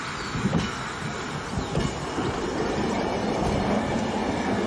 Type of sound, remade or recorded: recorded